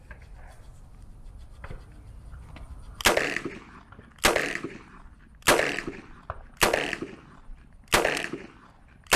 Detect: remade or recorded recorded